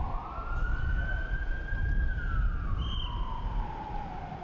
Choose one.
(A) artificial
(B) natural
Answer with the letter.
B